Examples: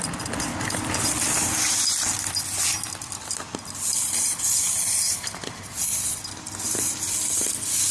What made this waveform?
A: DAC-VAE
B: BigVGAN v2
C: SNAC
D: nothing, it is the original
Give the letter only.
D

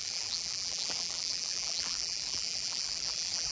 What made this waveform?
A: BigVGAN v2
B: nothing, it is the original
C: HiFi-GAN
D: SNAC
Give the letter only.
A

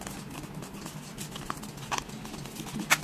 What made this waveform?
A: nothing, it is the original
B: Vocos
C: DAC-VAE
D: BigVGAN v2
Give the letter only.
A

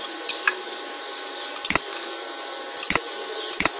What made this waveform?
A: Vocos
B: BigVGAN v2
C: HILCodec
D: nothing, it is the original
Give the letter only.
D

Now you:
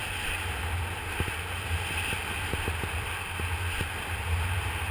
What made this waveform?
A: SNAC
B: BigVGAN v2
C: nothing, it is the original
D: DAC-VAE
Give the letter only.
C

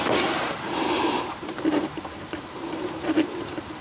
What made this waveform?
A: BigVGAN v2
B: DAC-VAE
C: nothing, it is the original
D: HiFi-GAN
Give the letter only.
A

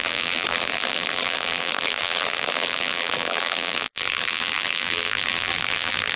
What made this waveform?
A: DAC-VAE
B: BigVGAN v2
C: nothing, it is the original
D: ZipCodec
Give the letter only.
B